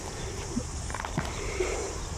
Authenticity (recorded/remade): remade